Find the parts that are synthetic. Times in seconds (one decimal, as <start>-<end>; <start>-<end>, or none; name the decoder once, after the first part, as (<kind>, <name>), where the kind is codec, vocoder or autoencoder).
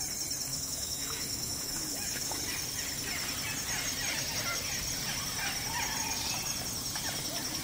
0.5-2.4 (autoencoder, DAC-VAE)